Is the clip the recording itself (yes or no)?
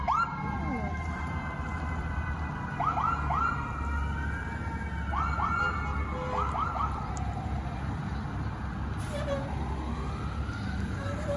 yes